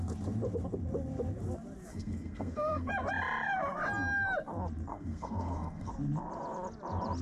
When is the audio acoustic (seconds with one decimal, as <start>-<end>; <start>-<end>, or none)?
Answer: 0.0-1.9; 2.9-4.9; 5.9-7.2